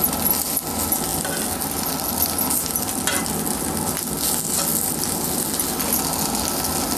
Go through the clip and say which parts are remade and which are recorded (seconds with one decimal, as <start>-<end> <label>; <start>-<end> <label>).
0.0-7.0 recorded